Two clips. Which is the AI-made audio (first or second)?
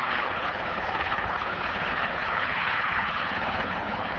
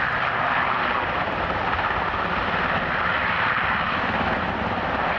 first